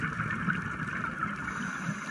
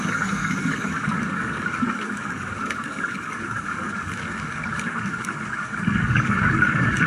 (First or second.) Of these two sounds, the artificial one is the second